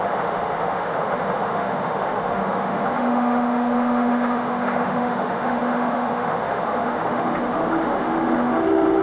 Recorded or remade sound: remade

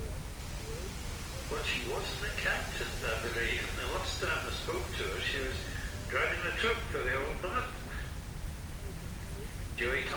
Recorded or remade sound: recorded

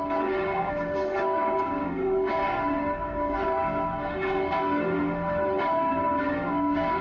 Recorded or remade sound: remade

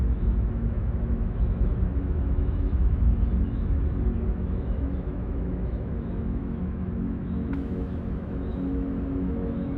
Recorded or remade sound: remade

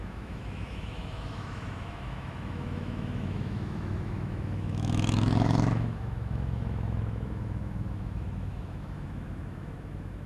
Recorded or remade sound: remade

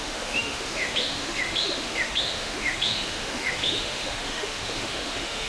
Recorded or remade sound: remade